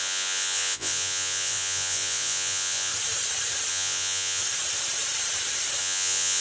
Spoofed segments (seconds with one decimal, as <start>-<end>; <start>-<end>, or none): 0.0-2.9; 3.7-4.4; 5.8-6.4